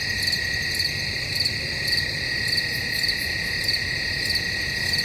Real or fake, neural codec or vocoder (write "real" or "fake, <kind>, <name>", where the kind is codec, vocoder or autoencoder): real